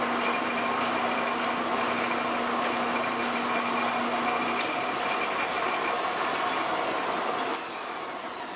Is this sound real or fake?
real